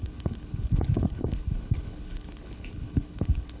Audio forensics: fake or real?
fake